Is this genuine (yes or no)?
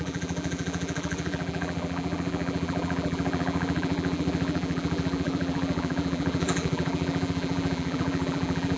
no